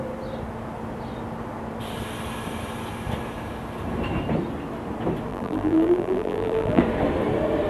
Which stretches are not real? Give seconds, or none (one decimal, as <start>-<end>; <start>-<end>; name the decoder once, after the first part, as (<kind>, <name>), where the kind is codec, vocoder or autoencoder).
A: 5.3-6.8 (vocoder, BigVGAN v2)